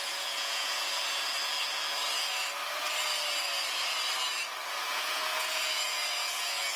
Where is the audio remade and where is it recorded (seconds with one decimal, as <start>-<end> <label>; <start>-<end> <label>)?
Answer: 0.0-1.0 remade; 1.0-4.7 recorded; 4.7-6.8 remade